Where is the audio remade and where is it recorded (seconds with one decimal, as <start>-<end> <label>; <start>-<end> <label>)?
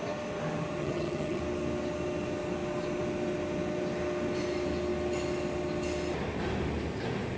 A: 0.0-0.8 recorded; 0.8-1.4 remade; 1.4-7.4 recorded